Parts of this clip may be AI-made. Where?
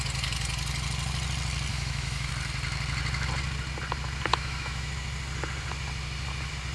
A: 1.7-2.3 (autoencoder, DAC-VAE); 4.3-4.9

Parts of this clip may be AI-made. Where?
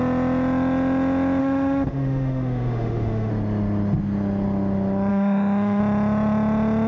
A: 1.4-3.3 (autoencoder, DAC-VAE); 5.1-5.8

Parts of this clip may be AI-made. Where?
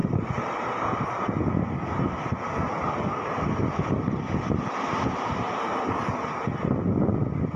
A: none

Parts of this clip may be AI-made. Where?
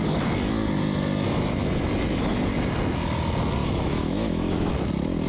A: 3.6-4.7 (autoencoder, DAC-VAE)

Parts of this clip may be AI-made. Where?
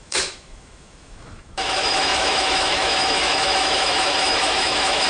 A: 0.0-5.1 (autoencoder, DAC-VAE)